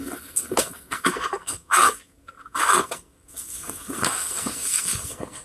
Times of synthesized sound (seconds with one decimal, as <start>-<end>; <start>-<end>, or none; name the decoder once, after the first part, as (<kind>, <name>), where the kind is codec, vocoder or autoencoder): 0.0-5.4 (codec, SNAC)